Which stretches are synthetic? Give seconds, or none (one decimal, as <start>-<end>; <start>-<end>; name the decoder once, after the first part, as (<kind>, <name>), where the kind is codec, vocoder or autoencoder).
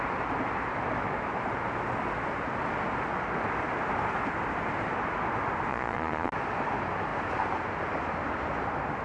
5.7-6.3 (vocoder, Vocos)